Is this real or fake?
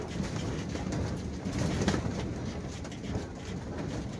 real